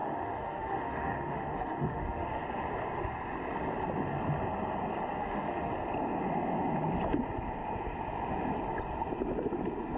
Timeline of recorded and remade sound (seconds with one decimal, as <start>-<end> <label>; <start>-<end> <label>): 0.0-2.4 remade; 2.4-5.2 recorded; 5.2-5.7 remade; 5.7-10.0 recorded